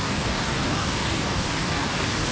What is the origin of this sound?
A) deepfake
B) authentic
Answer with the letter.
A